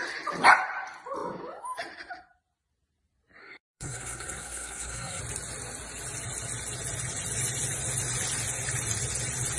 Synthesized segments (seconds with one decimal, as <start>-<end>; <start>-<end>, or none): 3.4-5.2